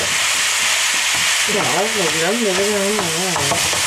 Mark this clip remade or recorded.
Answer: recorded